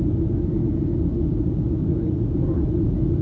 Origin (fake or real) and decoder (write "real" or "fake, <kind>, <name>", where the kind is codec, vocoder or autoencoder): real